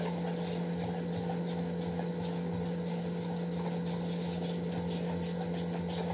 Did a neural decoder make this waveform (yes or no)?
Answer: no